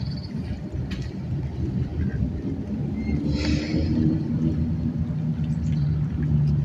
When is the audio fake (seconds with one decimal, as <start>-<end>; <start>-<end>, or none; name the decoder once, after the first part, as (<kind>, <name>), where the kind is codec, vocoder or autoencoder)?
3.7-4.3 (vocoder, BigVGAN v2)